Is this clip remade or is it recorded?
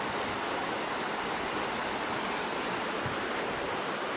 recorded